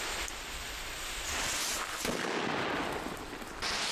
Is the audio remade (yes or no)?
no